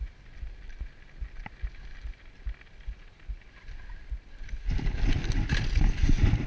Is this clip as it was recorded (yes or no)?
yes